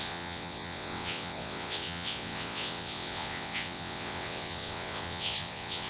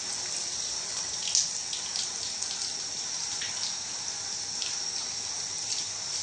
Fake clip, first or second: first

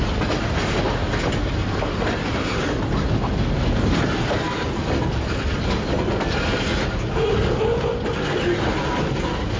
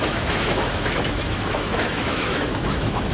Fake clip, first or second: second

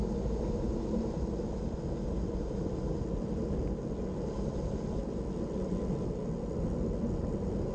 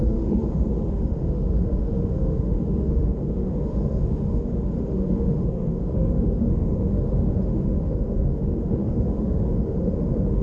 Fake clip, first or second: second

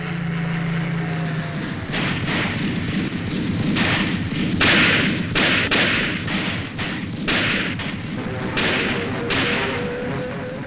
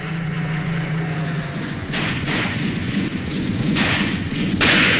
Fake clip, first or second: second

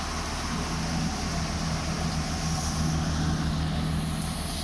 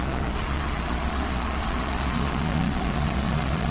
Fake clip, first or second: second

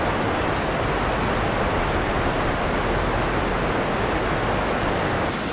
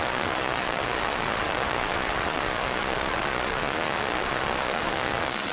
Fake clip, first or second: second